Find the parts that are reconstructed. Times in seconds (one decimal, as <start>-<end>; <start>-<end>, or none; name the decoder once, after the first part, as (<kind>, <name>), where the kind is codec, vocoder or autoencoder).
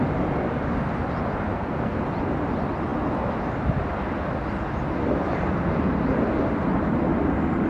1.5-2.0 (codec, SNAC)